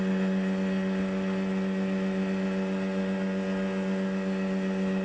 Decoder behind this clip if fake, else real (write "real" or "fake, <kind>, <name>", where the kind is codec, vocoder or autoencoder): real